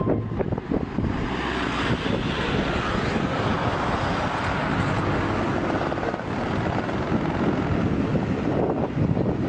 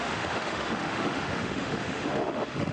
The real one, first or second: first